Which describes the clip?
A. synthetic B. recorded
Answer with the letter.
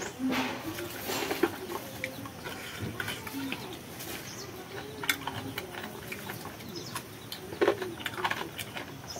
B